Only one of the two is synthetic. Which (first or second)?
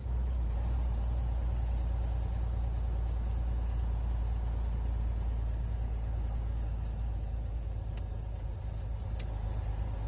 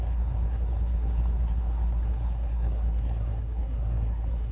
second